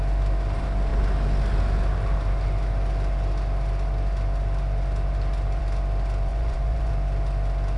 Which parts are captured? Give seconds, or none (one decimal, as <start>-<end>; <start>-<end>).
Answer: 0.0-6.3; 6.9-7.8